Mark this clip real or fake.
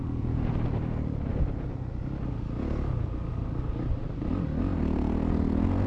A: real